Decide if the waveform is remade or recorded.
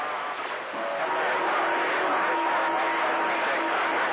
recorded